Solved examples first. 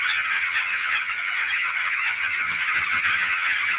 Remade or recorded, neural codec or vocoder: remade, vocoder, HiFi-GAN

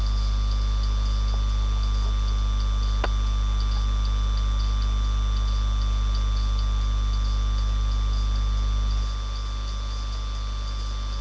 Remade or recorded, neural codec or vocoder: recorded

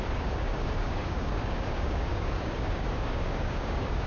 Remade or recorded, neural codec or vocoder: remade, codec, DAC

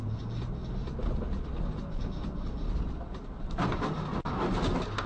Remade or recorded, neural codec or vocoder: recorded